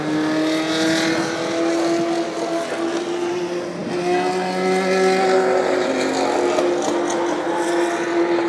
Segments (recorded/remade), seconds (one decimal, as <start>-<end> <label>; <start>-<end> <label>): 0.0-8.5 recorded